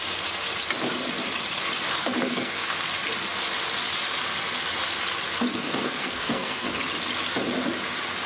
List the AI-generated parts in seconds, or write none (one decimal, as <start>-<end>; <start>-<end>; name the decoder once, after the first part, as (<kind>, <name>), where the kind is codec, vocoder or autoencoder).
2.0-2.8 (codec, SNAC); 5.5-6.7